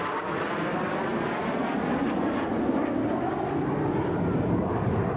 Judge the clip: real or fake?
real